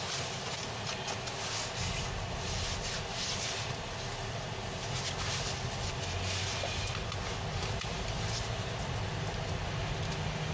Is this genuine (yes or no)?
yes